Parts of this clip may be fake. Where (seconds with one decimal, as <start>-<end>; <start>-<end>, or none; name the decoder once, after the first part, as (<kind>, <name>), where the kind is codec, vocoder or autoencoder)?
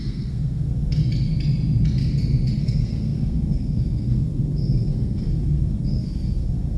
0.0-1.0 (codec, SNAC); 2.6-6.8